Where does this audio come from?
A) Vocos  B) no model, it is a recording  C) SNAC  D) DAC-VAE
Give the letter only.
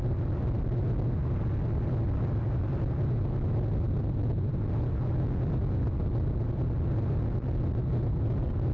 B